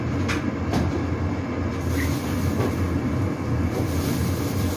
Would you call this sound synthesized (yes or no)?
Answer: no